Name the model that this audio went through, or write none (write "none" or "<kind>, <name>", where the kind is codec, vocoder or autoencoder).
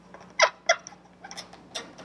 none